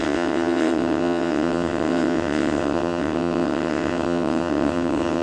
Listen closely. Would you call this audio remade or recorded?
remade